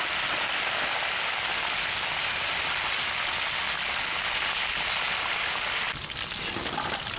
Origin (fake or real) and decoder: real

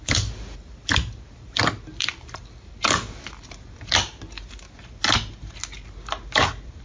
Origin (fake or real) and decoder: real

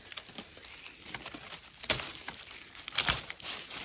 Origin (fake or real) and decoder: real